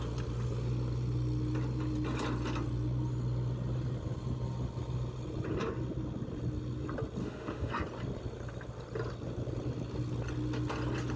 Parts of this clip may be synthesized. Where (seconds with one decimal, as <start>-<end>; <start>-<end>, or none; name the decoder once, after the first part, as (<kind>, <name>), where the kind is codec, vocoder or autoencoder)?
7.2-7.7 (autoencoder, DAC-VAE)